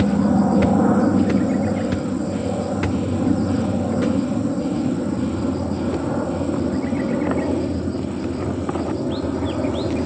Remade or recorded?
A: recorded